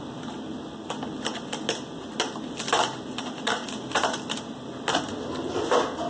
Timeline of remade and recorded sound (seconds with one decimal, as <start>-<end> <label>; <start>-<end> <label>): 0.0-6.1 recorded